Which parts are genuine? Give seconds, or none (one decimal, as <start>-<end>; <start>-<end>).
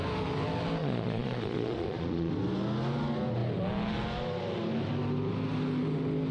0.0-0.8; 2.3-6.3